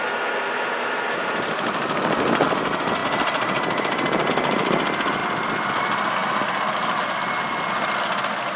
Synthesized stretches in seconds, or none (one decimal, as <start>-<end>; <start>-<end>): none